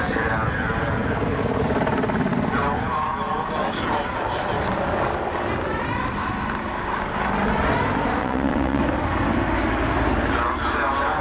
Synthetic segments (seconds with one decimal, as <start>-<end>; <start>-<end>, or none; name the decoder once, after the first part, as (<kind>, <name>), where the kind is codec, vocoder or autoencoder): 8.2-8.8 (vocoder, WaveNeXt)